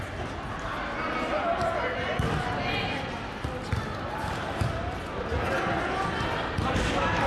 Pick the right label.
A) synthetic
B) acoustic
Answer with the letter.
B